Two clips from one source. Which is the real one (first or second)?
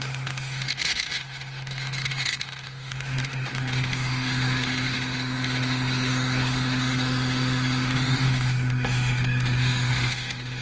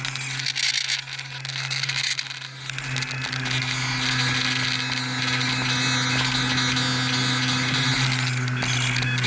second